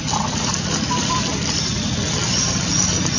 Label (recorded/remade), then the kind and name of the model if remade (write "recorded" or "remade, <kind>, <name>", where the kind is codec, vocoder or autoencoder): recorded